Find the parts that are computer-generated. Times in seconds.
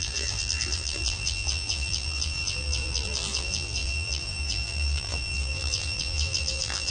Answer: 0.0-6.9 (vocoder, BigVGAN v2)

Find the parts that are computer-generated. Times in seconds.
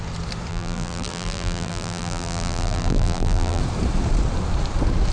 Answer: 0.5-3.6 (vocoder, BigVGAN v2)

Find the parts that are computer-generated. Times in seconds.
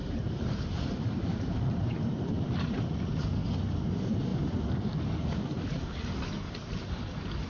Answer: 0.0-2.7 (vocoder, BigVGAN v2)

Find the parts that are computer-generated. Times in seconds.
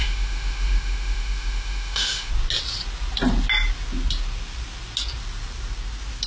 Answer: 0.0-2.3 (autoencoder, DAC-VAE)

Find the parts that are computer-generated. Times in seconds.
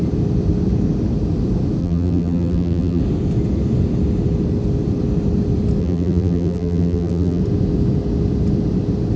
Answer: 1.8-3.0 (vocoder, BigVGAN v2); 5.8-7.4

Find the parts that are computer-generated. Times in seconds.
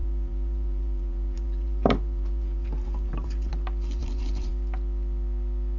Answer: 0.0-3.5 (vocoder, BigVGAN v2); 4.0-4.5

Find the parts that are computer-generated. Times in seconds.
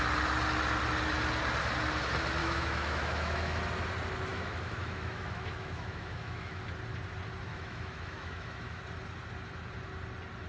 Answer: 2.4-3.6 (autoencoder, DAC-VAE); 4.3-6.6; 7.5-8.8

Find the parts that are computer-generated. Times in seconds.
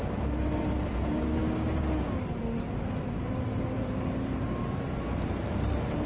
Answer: 0.0-1.4 (vocoder, BigVGAN v2); 3.0-6.1